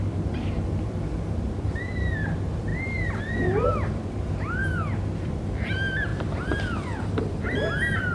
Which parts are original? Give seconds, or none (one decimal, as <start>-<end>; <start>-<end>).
none